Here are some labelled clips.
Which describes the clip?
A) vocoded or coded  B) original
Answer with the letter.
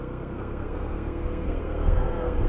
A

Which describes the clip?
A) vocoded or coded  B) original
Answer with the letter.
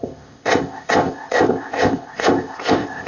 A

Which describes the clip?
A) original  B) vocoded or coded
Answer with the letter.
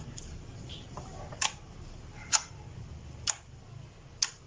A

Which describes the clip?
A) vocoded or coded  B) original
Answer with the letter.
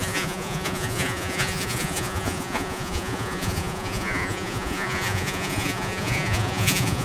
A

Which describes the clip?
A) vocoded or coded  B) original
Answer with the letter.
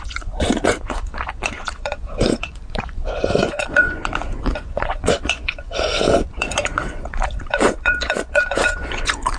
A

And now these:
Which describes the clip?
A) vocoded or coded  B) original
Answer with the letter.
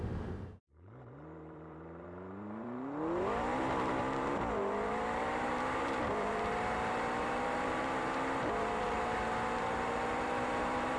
A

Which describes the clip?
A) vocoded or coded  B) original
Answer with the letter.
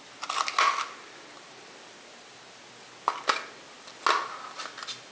B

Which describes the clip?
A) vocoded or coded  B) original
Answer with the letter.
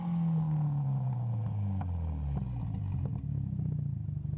B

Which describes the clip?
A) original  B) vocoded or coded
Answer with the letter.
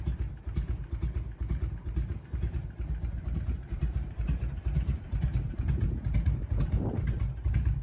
B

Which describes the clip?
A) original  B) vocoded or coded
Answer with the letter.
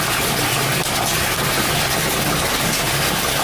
A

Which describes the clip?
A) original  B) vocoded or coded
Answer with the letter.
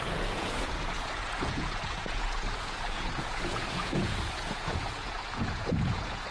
B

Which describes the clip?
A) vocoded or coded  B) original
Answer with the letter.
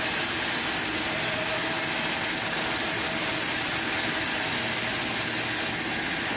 B